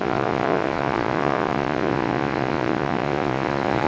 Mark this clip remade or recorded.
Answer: remade